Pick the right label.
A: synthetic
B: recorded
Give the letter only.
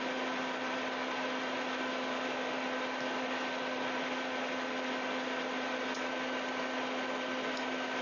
B